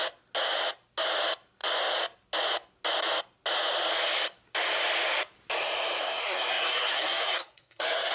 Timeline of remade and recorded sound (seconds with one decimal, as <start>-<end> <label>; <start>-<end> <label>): 0.0-6.0 recorded; 6.0-8.1 remade